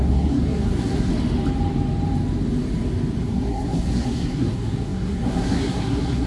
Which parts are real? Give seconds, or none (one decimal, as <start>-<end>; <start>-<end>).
1.1-3.2

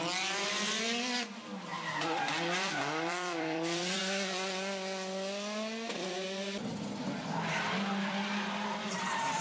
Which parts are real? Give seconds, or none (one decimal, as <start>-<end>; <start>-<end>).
1.7-2.3; 4.0-7.2

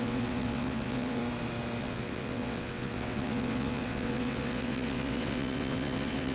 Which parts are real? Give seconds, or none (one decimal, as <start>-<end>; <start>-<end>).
1.2-1.8

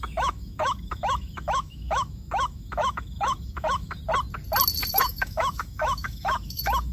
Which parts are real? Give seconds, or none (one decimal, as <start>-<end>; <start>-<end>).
4.0-4.9

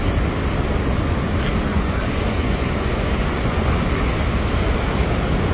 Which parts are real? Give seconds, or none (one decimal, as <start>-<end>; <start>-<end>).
0.0-1.7; 3.6-5.5